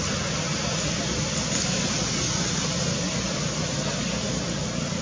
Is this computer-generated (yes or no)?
no